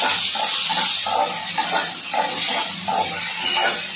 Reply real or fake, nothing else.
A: real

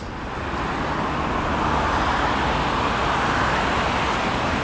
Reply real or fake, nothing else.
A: real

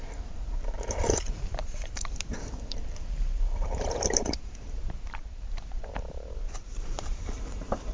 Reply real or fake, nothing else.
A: fake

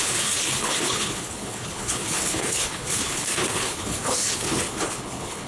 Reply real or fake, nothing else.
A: fake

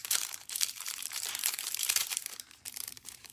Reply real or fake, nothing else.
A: fake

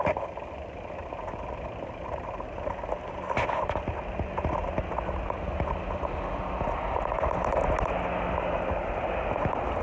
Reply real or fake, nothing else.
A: real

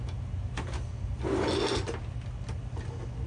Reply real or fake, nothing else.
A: real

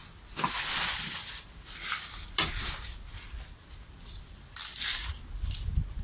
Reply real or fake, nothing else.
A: real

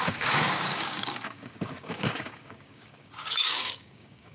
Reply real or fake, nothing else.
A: fake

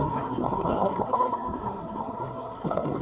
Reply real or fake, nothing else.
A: fake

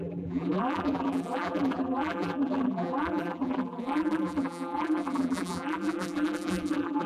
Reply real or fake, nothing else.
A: fake